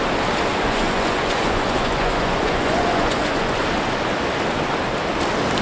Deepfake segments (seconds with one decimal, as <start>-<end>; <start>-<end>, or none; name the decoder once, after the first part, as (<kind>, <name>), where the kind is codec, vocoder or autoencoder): 0.5-3.6 (vocoder, Vocos)